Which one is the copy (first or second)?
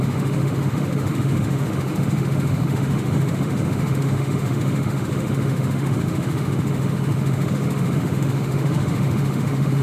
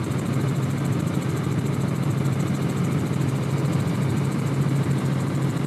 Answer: first